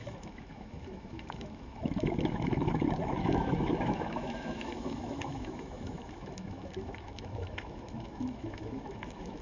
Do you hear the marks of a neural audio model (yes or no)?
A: yes